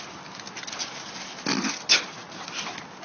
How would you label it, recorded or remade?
recorded